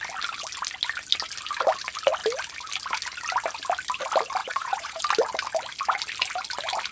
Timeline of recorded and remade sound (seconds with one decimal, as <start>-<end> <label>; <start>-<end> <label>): 0.0-4.4 recorded; 4.4-5.0 remade; 5.0-6.9 recorded